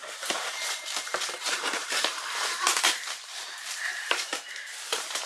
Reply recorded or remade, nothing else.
remade